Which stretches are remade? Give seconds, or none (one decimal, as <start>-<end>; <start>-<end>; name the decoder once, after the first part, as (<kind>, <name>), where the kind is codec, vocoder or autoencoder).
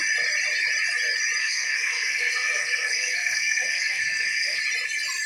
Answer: 1.4-4.6 (codec, SNAC)